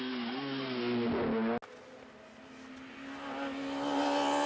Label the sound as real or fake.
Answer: real